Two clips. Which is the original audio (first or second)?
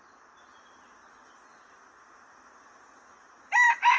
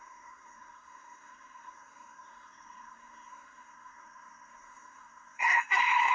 first